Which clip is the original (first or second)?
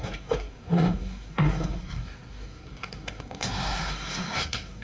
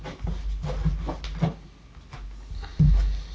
second